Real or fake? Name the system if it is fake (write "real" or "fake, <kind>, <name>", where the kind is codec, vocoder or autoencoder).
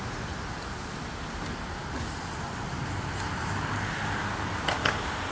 real